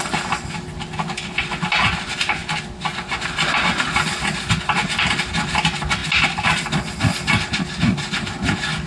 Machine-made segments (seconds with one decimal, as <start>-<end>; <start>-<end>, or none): none